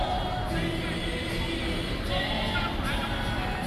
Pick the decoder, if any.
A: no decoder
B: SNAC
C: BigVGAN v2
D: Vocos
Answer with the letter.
A